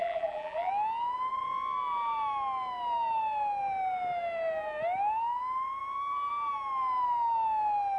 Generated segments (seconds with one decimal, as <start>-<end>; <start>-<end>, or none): 0.0-0.7